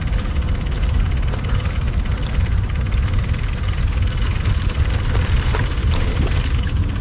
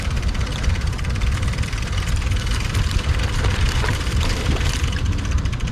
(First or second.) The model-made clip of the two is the second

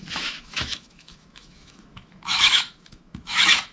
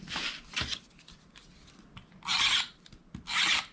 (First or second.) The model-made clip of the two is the first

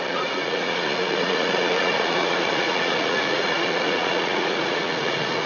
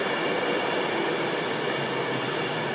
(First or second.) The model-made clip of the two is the first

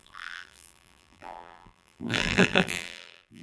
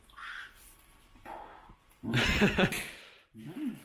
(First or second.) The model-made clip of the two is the first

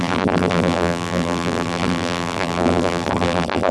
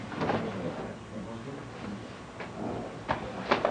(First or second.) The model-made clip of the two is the first